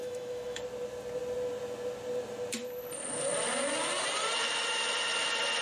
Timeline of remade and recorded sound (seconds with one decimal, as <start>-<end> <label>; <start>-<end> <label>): 0.0-0.6 remade; 0.6-5.6 recorded